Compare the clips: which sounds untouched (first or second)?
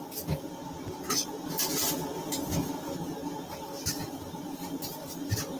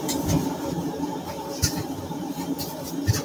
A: first